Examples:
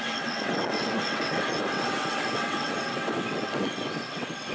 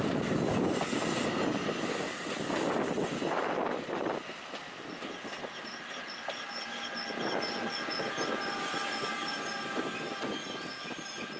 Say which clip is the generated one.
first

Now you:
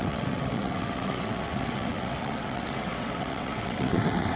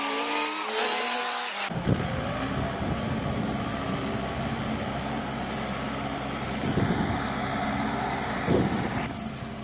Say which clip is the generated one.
first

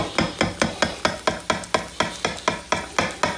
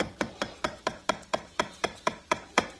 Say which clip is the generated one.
second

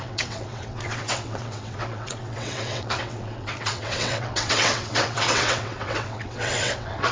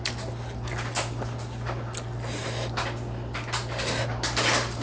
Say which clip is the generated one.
first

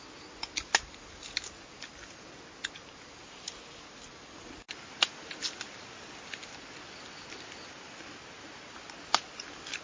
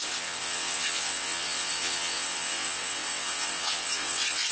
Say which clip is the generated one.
second